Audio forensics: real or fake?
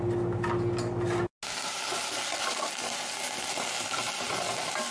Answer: real